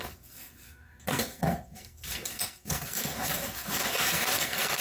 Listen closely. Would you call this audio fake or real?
fake